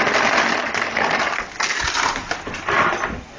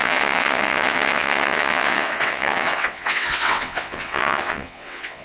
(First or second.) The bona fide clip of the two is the first